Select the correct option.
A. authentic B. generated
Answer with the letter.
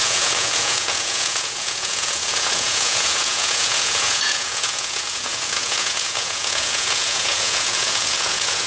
B